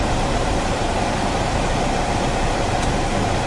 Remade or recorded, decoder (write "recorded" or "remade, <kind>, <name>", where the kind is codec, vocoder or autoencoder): remade, vocoder, BigVGAN v2